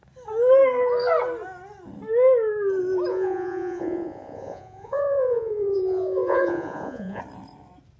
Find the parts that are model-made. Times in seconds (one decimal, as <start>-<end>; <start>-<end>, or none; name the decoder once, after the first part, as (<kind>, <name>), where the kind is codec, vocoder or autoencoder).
3.1-7.2 (vocoder, Vocos)